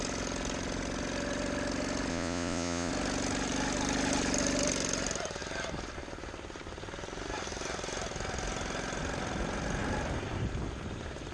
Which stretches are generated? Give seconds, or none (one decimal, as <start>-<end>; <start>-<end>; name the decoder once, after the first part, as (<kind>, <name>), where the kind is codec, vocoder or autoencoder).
2.1-2.9 (vocoder, Vocos)